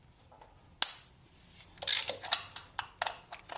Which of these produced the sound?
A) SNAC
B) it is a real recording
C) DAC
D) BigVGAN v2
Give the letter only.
B